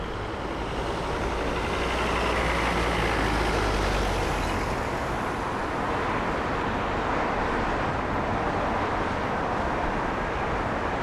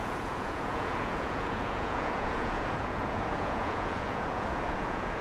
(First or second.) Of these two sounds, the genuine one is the first